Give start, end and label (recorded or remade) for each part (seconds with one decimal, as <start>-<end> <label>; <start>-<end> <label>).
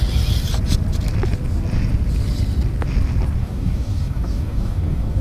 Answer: 0.0-3.4 recorded; 3.4-5.2 remade